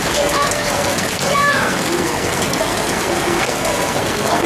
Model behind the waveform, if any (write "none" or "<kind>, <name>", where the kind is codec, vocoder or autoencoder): codec, SNAC